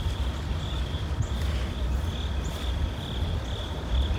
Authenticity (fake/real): real